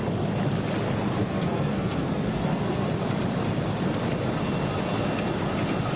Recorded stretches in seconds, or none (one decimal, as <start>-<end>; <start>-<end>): 0.0-1.2; 2.9-6.0